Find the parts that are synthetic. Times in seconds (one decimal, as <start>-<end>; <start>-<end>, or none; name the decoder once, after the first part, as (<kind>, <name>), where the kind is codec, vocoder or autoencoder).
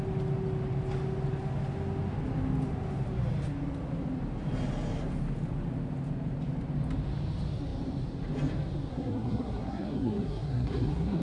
8.9-11.2 (codec, SNAC)